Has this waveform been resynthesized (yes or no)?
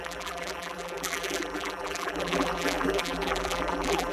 yes